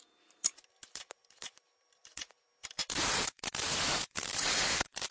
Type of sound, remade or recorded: remade